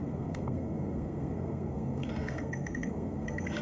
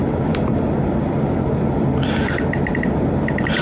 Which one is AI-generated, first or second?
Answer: first